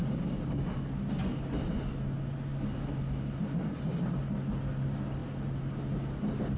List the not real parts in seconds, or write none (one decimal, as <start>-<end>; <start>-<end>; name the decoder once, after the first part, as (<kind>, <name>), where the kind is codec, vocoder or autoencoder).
none

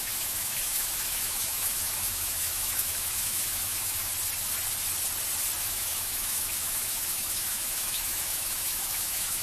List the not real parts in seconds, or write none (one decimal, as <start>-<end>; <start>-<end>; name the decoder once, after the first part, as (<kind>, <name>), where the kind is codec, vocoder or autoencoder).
0.0-4.1 (autoencoder, DAC-VAE); 5.6-9.4

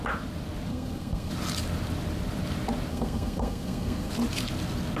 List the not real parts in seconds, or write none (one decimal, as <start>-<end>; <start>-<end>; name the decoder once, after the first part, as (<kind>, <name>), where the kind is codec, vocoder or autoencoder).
0.7-1.3 (codec, SNAC); 2.9-4.1

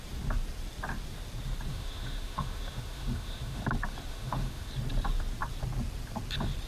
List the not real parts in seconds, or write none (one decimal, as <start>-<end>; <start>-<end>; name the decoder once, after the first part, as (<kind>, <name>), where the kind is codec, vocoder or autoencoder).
1.7-3.6 (autoencoder, DAC-VAE); 4.1-4.7

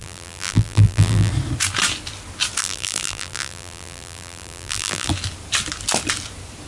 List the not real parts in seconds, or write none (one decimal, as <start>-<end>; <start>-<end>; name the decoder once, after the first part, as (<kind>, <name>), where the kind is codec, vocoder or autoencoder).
0.0-1.3 (vocoder, BigVGAN v2); 2.6-5.1

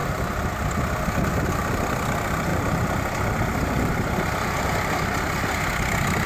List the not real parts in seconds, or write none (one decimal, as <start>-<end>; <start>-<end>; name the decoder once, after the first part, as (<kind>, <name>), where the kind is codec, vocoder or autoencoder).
2.5-4.9 (vocoder, BigVGAN v2)